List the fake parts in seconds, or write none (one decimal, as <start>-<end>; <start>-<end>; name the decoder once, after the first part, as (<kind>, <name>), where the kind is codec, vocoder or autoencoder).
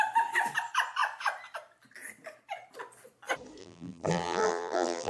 3.6-5.1 (vocoder, BigVGAN v2)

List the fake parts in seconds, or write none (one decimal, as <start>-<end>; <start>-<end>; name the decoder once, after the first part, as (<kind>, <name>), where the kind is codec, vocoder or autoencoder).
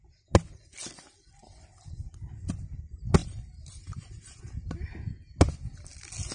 1.4-2.1 (vocoder, BigVGAN v2); 3.2-4.4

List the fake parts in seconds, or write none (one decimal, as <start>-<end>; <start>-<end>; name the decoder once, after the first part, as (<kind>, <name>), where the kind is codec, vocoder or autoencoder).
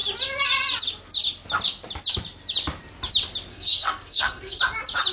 3.5-4.6 (codec, SNAC)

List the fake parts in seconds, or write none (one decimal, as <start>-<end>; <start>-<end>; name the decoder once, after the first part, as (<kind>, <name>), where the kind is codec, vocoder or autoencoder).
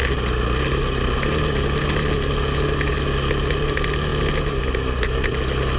none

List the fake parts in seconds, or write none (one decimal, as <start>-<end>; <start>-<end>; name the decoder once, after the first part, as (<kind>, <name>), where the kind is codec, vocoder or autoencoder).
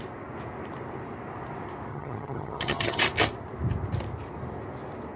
1.9-3.0 (vocoder, HiFi-GAN)